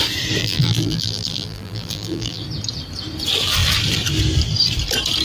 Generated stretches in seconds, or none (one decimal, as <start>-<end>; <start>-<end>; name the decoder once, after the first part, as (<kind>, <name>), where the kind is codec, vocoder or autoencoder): 0.4-2.4 (vocoder, BigVGAN v2)